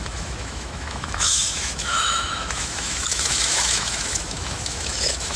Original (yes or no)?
no